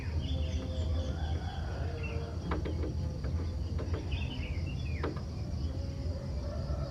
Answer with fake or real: real